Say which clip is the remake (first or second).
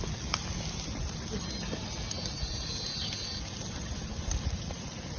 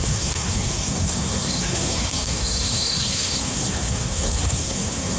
second